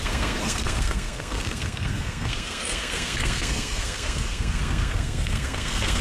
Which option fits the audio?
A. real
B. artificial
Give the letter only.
B